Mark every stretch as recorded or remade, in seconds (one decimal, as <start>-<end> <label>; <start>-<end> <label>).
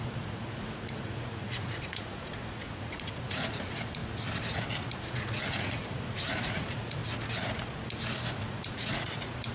0.0-4.0 remade; 4.0-5.1 recorded; 5.1-7.0 remade; 7.0-8.3 recorded; 8.3-9.5 remade